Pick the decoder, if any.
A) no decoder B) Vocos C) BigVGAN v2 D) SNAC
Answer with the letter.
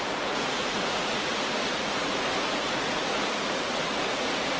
B